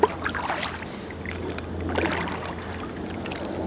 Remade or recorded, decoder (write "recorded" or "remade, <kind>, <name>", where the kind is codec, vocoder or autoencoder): recorded